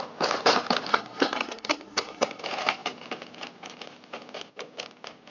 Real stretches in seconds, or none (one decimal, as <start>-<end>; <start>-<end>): 0.0-0.9; 2.4-5.3